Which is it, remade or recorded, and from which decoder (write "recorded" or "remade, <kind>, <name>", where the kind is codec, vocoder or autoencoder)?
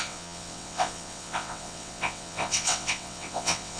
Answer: remade, vocoder, WaveNeXt